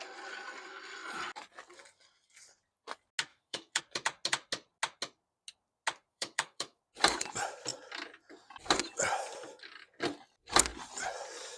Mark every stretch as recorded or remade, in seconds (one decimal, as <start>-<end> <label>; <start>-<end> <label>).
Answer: 0.0-3.3 recorded; 3.3-3.8 remade; 3.8-6.1 recorded; 6.1-6.8 remade; 6.8-11.6 recorded